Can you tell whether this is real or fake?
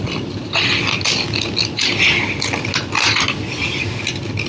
real